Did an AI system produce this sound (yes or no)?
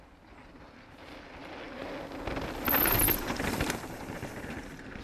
no